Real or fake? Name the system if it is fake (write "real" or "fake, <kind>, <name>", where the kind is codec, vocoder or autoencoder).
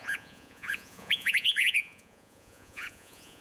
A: fake, vocoder, Vocos